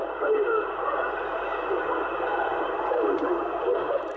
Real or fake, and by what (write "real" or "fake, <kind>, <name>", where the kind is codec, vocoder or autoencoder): fake, vocoder, BigVGAN v2